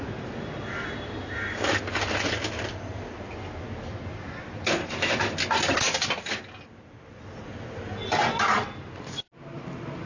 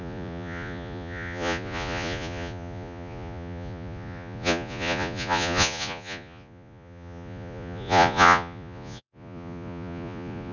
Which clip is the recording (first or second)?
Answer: first